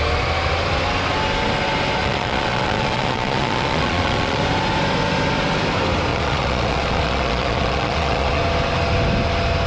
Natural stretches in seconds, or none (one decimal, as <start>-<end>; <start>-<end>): 0.0-2.0; 4.4-6.1; 8.4-9.7